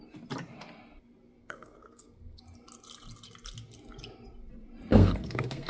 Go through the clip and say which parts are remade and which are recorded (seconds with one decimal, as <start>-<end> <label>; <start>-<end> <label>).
0.0-1.4 recorded; 1.4-2.4 remade; 2.4-4.9 recorded; 4.9-5.7 remade